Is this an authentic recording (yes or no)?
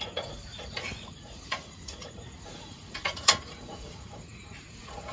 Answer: no